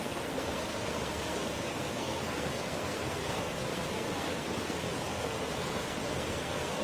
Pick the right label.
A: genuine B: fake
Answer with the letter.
B